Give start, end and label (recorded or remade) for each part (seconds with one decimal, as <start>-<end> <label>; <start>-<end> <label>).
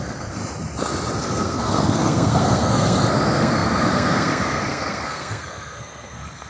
0.0-0.4 remade; 0.4-1.2 recorded; 1.2-6.5 remade